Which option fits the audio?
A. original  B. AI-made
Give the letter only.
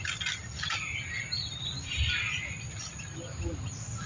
A